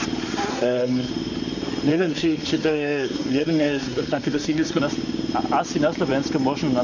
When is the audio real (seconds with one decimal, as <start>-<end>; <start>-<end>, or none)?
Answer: 0.0-0.5; 1.1-1.9; 4.8-6.8